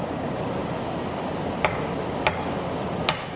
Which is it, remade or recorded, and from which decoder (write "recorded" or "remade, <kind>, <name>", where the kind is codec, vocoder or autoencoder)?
recorded